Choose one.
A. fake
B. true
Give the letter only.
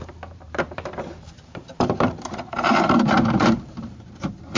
A